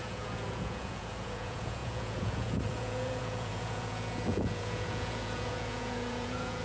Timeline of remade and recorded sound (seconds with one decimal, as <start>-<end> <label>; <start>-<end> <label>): 0.0-6.6 remade